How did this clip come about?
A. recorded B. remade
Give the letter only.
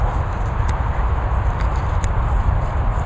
A